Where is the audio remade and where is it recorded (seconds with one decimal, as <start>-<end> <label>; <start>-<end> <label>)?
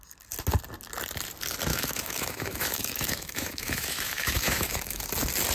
0.0-1.7 recorded; 1.7-5.0 remade; 5.0-5.5 recorded